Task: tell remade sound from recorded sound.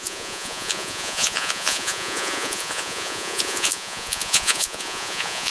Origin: remade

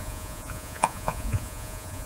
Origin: remade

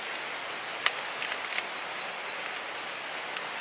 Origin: recorded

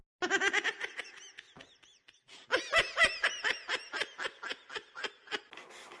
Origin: recorded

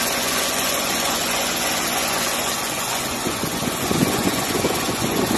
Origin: remade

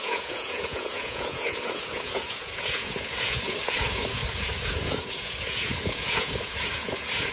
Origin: remade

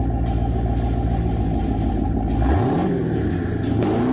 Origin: recorded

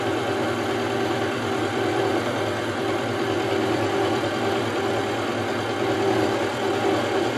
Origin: recorded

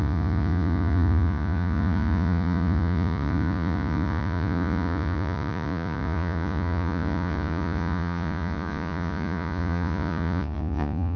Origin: remade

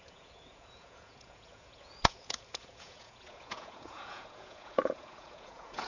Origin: remade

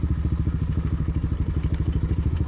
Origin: recorded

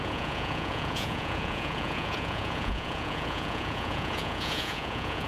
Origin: remade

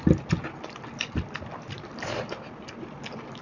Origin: recorded